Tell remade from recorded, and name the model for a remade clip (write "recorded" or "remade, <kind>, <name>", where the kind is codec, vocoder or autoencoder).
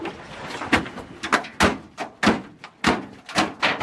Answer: recorded